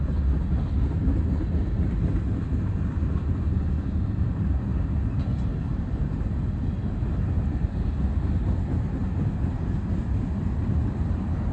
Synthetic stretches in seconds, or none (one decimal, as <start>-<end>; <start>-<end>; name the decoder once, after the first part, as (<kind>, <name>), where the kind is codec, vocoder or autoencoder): none